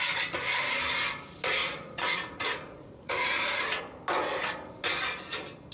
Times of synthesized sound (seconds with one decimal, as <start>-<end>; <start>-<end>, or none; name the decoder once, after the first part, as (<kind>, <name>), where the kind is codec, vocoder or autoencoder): 1.6-3.8 (vocoder, Vocos)